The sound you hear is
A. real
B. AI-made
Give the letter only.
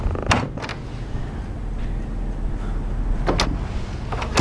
A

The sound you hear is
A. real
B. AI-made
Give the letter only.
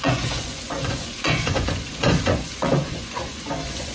B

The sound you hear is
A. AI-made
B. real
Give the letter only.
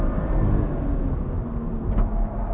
B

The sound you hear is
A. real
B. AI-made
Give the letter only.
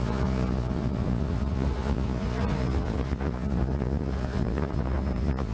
B